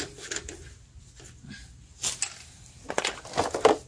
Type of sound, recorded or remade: recorded